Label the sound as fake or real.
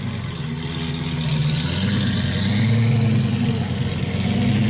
real